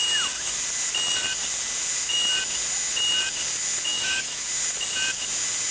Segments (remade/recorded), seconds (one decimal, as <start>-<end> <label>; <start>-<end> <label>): 0.0-3.9 recorded; 3.9-4.4 remade; 4.4-5.7 recorded